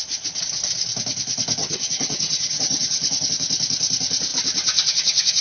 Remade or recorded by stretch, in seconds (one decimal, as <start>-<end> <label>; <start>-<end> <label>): 0.0-1.6 recorded; 1.6-3.3 remade; 3.3-5.4 recorded